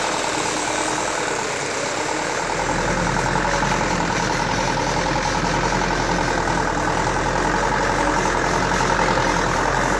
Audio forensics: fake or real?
real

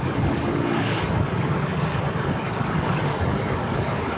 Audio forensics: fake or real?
fake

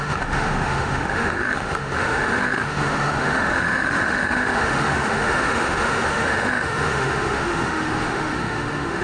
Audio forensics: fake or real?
fake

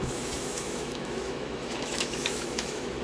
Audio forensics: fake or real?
fake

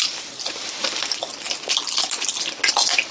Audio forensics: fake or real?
real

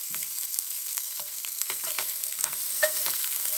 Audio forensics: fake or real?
fake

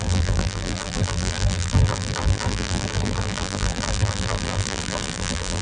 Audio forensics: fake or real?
fake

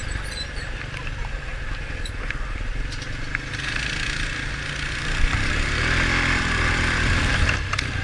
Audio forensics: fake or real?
real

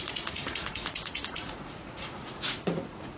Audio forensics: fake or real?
fake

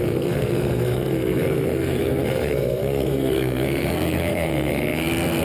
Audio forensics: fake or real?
fake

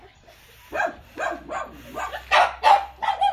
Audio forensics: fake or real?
real